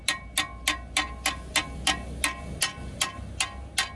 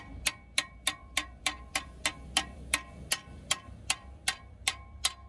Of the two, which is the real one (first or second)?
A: first